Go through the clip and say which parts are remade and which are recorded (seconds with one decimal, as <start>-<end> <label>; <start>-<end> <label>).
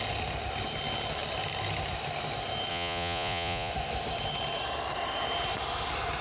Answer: 0.0-2.7 recorded; 2.7-3.7 remade; 3.7-6.2 recorded